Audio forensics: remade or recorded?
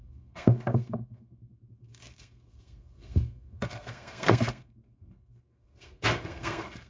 remade